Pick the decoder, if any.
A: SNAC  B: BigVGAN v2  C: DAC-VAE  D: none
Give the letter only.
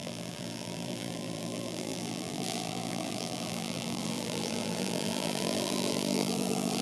B